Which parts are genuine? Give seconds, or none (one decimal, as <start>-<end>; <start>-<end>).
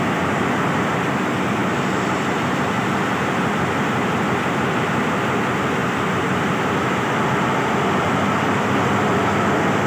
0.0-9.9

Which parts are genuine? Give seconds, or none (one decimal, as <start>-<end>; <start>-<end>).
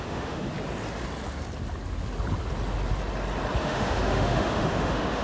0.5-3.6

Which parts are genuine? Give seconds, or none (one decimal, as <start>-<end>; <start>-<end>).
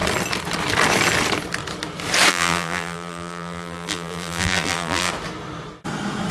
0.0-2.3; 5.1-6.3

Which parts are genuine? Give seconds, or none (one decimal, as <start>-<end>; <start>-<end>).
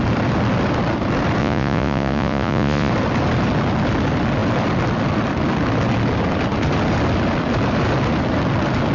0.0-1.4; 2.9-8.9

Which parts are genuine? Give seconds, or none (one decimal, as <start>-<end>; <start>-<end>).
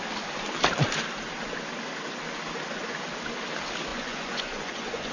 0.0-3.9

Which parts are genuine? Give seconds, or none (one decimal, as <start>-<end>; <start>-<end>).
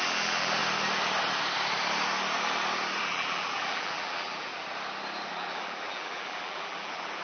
0.6-3.0; 4.5-5.3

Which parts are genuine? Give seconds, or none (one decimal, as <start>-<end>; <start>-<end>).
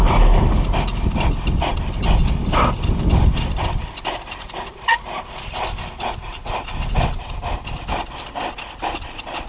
0.0-9.5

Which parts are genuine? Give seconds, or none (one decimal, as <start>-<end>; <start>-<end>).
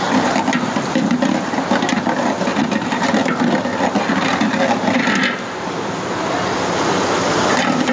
0.0-7.9